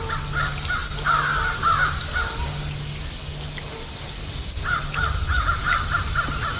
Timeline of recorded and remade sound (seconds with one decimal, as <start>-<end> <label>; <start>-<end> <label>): 0.0-6.6 recorded

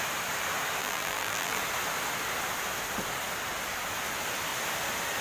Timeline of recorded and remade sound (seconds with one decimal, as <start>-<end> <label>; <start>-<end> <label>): 0.0-0.8 recorded; 0.8-1.6 remade; 1.6-5.2 recorded